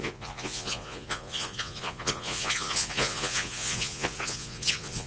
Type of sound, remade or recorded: remade